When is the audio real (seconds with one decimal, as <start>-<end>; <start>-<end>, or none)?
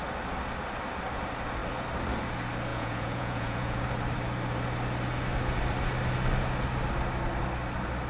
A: 0.0-2.7; 3.8-8.1